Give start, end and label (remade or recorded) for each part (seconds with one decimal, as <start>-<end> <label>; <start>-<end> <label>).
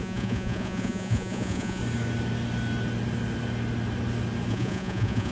0.0-1.8 remade; 1.8-4.5 recorded; 4.5-5.3 remade